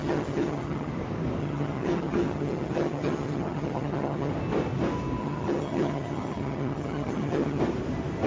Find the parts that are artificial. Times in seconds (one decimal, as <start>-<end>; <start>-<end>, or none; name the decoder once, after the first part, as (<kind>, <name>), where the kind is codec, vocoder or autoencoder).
0.0-0.9 (vocoder, HiFi-GAN); 1.4-4.3; 5.2-7.6